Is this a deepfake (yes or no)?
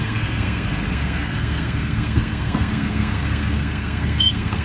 yes